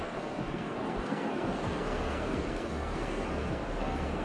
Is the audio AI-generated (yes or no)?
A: yes